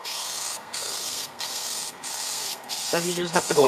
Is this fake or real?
fake